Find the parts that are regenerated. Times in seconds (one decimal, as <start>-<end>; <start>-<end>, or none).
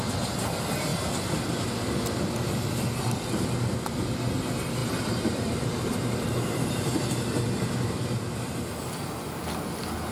0.9-1.5; 4.8-8.5